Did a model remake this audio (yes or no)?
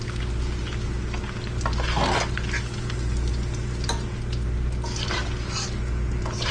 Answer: no